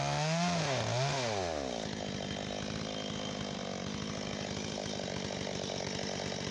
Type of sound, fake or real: real